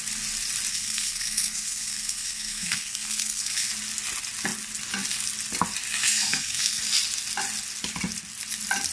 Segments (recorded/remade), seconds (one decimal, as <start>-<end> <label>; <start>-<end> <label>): 0.0-0.7 recorded; 0.7-3.7 remade; 3.7-6.0 recorded; 6.0-6.8 remade; 6.8-8.9 recorded